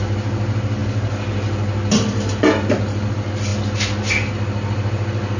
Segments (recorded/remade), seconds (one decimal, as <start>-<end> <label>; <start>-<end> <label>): 0.0-5.4 recorded